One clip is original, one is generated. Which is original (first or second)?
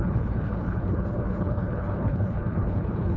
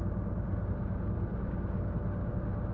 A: second